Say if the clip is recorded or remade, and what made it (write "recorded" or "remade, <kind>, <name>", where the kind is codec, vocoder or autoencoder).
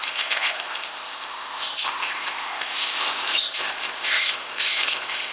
remade, codec, ZipCodec